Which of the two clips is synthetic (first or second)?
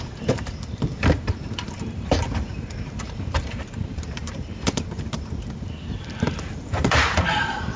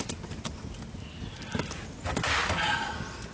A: first